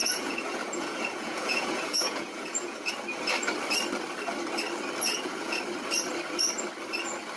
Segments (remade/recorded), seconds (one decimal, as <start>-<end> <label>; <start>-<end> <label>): 0.0-2.9 remade; 2.9-5.1 recorded; 5.1-5.6 remade; 5.6-7.4 recorded